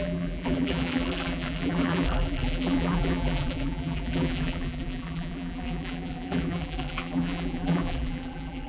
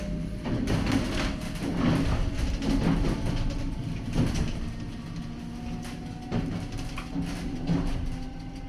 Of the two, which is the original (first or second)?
second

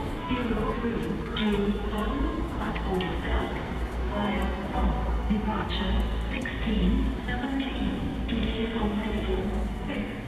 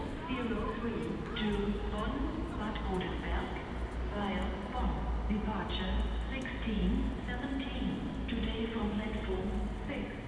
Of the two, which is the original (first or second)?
second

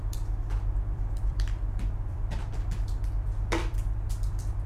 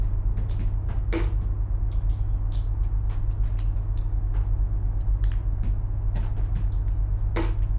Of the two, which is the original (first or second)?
second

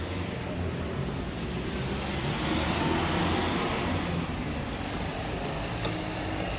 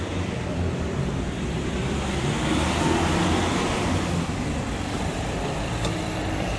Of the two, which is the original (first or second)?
first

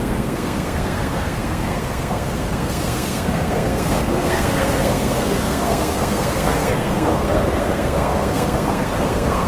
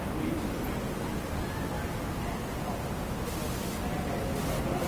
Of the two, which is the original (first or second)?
second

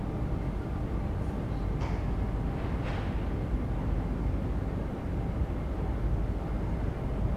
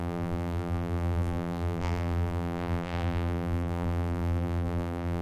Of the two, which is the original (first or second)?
first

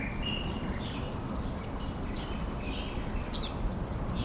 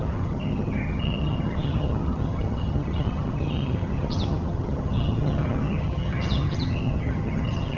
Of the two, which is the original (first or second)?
first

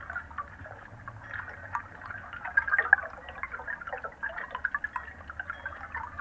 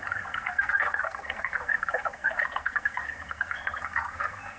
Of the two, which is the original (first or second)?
first